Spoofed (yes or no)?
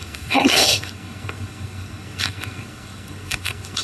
yes